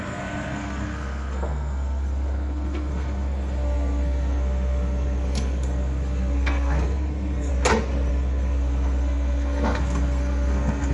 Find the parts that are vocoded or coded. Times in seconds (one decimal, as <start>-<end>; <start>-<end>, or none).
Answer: 0.0-7.5; 8.1-10.9

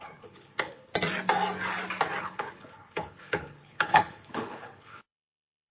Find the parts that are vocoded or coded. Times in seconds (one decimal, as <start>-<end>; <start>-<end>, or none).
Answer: 0.0-0.9; 2.2-5.7

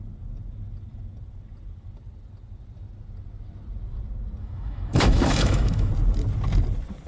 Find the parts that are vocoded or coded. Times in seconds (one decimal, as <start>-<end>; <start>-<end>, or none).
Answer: 4.4-5.9

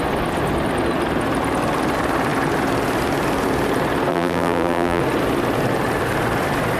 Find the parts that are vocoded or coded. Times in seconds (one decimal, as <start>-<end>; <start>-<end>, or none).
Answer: 4.1-5.0

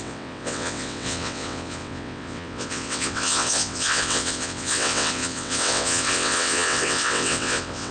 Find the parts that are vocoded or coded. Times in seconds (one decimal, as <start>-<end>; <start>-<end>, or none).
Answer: 0.0-7.9

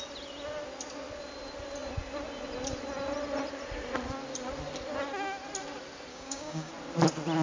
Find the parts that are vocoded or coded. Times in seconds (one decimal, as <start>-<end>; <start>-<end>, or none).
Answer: 6.1-6.7